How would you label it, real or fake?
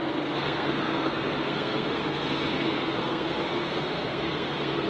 fake